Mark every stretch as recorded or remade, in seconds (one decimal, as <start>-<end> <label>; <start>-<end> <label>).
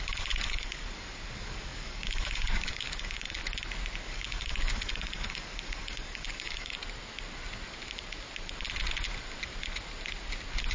0.0-3.4 remade; 3.4-4.0 recorded; 4.0-6.8 remade; 6.8-10.7 recorded